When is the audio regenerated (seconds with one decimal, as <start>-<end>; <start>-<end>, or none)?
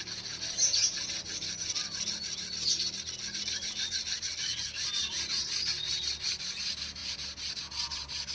none